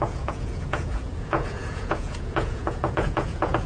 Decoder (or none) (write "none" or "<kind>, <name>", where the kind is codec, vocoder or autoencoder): vocoder, Vocos